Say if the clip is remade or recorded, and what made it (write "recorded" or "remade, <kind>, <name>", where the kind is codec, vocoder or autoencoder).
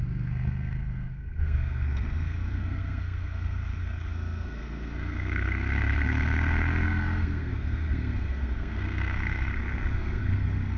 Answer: remade, codec, SNAC